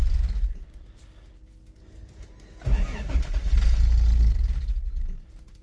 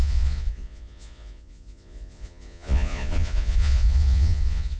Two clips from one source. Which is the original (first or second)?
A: first